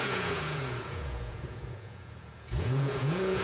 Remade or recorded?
remade